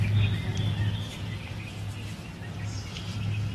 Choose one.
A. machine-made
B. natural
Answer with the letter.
B